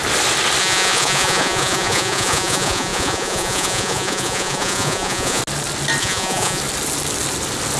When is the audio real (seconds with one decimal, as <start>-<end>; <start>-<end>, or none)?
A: 0.0-0.6; 5.4-6.0; 6.6-7.8